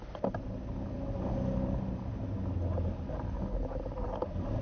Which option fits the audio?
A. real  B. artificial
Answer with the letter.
A